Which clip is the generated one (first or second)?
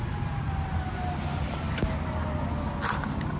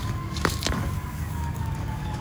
second